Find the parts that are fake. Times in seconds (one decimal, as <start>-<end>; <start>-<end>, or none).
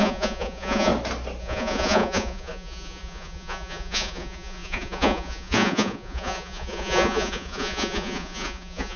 0.0-0.9; 1.4-9.0